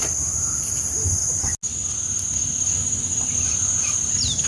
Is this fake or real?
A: real